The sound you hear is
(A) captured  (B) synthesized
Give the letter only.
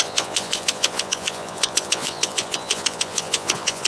B